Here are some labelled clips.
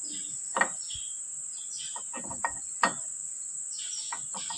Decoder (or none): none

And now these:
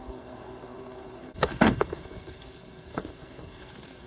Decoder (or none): codec, SNAC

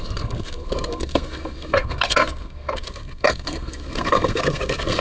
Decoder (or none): codec, SNAC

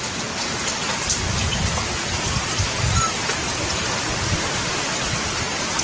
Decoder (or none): none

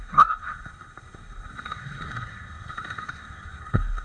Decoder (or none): codec, SNAC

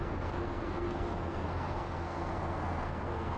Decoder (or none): codec, SNAC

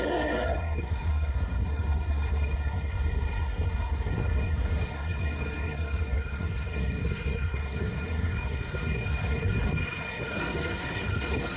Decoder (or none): codec, SNAC